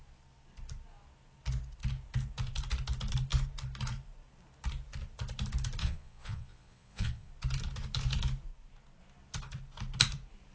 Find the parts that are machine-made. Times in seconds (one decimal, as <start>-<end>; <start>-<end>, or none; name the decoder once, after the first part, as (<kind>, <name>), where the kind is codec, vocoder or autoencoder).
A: 5.8-7.3 (vocoder, Vocos)